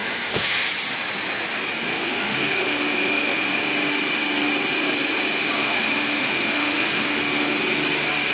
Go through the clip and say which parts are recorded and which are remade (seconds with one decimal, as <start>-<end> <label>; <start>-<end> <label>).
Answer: 0.0-0.7 remade; 0.7-1.9 recorded; 1.9-3.5 remade; 3.5-5.6 recorded; 5.6-7.6 remade; 7.6-8.3 recorded